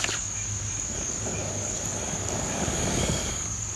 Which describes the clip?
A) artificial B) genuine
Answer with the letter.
A